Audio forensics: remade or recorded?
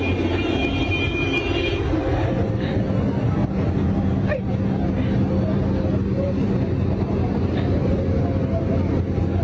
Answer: recorded